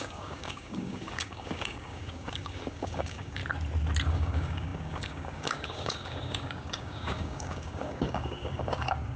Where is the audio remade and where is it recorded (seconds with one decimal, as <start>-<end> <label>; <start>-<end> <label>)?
0.0-3.4 remade; 3.4-4.0 recorded; 4.0-9.2 remade